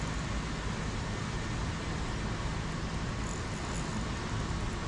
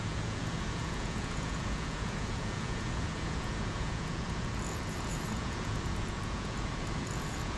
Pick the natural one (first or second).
first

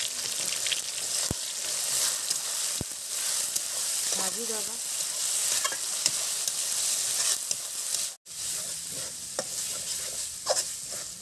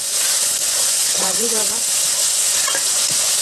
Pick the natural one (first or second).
first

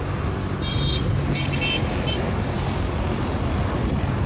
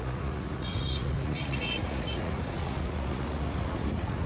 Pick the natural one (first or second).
first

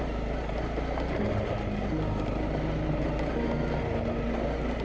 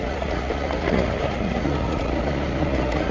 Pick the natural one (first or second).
first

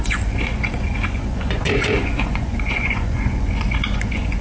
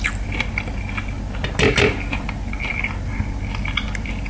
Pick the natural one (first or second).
second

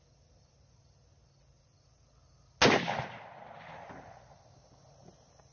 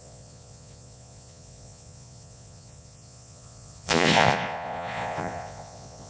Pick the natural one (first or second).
first